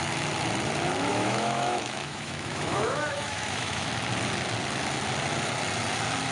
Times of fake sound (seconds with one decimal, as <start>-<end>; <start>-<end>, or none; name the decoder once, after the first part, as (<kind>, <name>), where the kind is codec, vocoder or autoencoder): 1.1-3.9 (autoencoder, DAC-VAE)